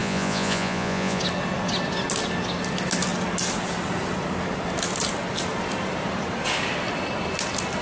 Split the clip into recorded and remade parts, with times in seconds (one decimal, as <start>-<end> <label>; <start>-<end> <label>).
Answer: 0.0-1.2 remade; 1.2-7.8 recorded